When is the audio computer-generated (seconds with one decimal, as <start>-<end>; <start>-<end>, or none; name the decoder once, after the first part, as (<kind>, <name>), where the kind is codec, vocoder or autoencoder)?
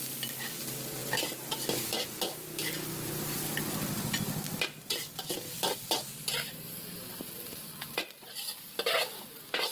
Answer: none